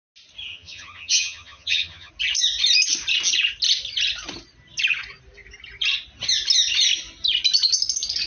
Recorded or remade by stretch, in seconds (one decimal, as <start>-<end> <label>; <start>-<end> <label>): 0.0-0.5 recorded; 0.5-2.1 remade; 2.1-8.3 recorded